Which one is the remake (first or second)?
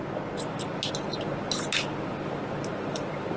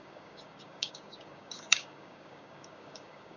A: second